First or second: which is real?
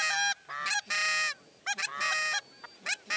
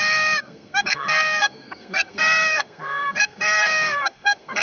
first